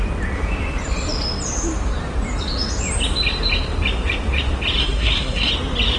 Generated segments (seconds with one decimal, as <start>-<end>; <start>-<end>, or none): 4.8-5.5